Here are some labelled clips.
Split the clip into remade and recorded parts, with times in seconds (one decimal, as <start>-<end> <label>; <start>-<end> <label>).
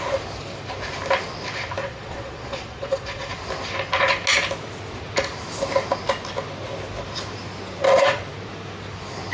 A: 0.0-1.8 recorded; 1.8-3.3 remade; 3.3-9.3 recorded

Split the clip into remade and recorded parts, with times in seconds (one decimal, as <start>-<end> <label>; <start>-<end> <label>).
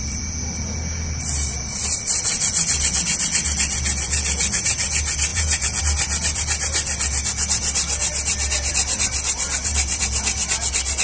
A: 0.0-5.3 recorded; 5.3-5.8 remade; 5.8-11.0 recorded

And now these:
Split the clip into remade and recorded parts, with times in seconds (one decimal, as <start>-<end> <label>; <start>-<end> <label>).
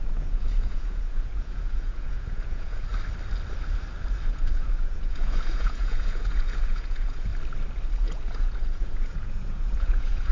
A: 0.0-2.9 remade; 2.9-4.3 recorded; 4.3-7.3 remade; 7.3-7.9 recorded; 7.9-10.3 remade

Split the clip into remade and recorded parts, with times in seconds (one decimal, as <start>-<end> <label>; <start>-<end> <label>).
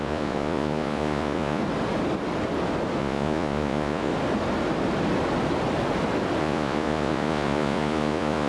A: 0.0-1.6 remade; 1.6-3.0 recorded; 3.0-4.1 remade; 4.1-6.4 recorded; 6.4-8.5 remade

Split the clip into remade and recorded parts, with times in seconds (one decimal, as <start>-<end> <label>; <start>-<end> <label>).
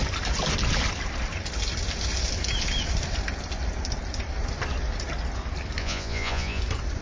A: 0.0-5.8 recorded; 5.8-6.6 remade; 6.6-7.0 recorded